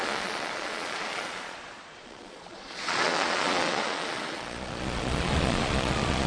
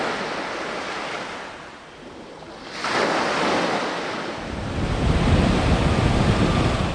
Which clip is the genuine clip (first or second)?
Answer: second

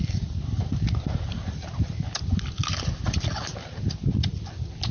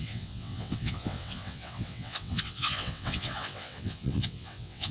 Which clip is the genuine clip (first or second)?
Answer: first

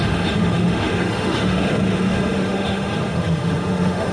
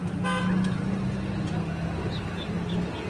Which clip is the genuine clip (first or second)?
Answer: second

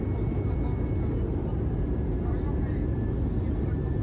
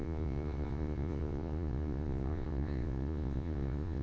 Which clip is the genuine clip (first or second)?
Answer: first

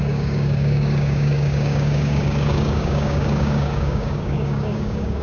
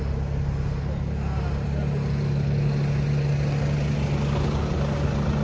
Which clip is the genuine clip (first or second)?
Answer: second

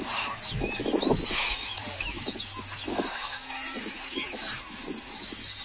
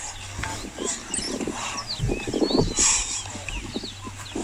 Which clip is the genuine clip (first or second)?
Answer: second